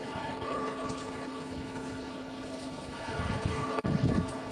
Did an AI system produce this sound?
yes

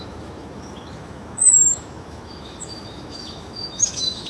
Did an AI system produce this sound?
yes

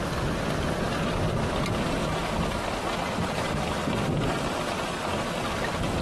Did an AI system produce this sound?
no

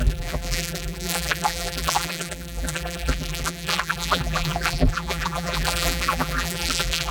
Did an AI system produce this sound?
yes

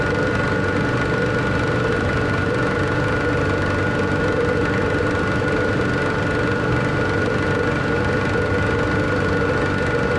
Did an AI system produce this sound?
no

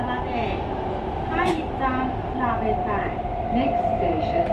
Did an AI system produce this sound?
no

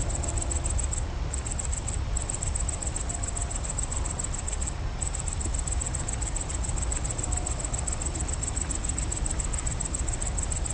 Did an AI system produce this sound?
no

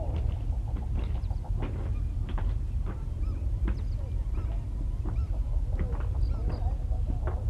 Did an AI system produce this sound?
no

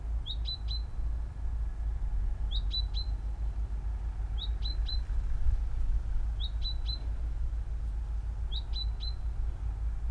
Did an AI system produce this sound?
no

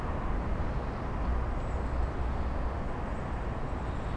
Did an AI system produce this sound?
no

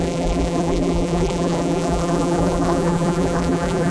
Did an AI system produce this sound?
yes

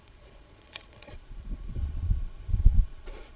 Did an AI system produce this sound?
yes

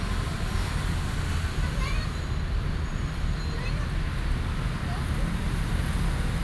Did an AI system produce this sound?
no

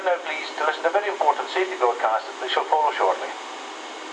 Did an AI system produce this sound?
no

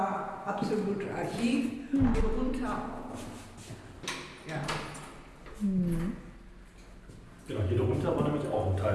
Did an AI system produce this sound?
no